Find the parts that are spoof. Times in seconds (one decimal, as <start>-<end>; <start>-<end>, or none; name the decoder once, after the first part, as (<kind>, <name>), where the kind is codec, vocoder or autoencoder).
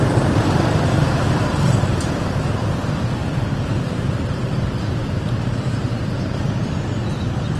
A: 0.0-2.3 (vocoder, BigVGAN v2); 3.2-6.3